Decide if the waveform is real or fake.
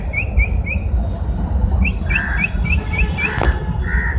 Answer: real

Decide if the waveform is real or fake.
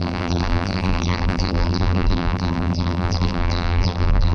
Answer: fake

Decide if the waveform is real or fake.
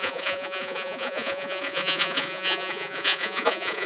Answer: fake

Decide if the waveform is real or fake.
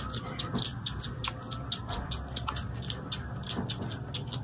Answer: real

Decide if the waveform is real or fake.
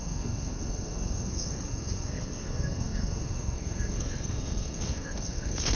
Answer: fake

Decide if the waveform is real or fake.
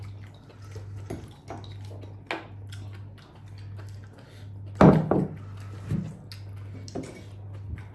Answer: real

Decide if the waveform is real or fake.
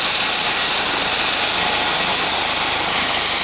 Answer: real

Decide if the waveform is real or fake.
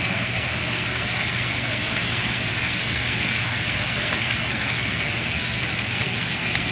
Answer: fake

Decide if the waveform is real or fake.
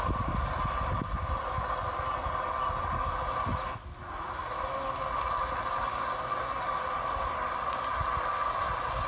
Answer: real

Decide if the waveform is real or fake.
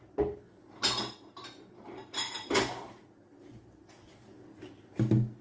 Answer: real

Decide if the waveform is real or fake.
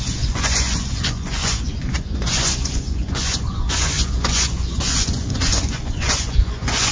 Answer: fake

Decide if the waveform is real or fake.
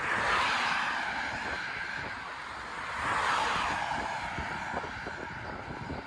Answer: real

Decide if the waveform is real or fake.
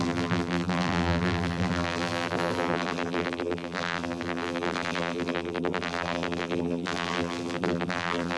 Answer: fake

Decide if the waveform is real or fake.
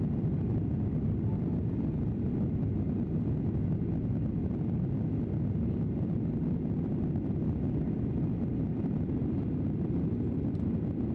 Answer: fake